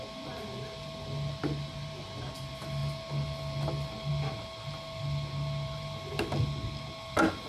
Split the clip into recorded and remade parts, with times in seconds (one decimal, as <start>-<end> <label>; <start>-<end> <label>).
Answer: 0.0-7.5 recorded